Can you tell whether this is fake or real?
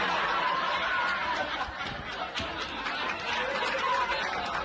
real